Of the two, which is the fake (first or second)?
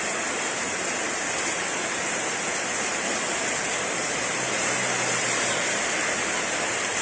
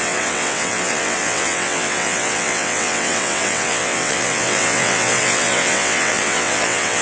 second